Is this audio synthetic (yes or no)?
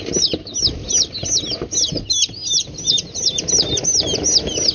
no